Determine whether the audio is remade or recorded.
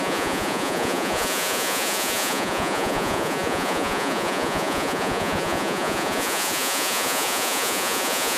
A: remade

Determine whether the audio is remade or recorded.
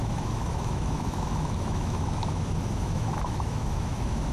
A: remade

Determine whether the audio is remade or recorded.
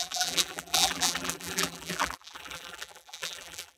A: remade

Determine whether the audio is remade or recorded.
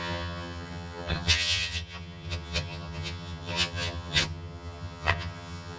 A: remade